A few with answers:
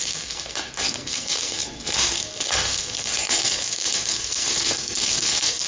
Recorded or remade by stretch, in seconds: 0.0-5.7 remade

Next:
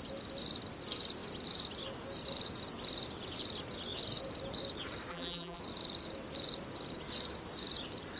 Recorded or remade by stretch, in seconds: 0.0-5.1 recorded; 5.1-5.6 remade; 5.6-8.2 recorded

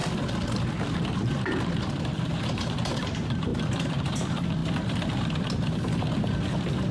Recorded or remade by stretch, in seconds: 0.0-1.9 recorded; 1.9-4.6 remade; 4.6-6.9 recorded

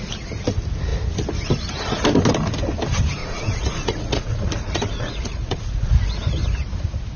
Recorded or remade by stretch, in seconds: 0.0-3.2 recorded; 3.2-5.9 remade; 5.9-7.2 recorded

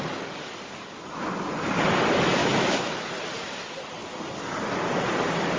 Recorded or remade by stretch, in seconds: 0.0-2.4 recorded; 2.4-3.1 remade; 3.1-5.6 recorded